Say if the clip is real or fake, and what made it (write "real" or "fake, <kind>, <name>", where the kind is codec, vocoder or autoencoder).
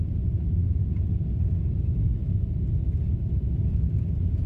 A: real